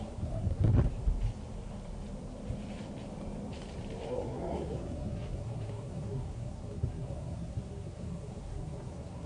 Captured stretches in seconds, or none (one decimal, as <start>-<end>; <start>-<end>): 0.9-4.1